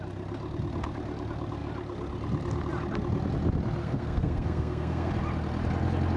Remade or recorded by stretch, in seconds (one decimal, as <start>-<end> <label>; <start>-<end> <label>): 0.0-3.8 recorded; 3.8-5.1 remade; 5.1-6.2 recorded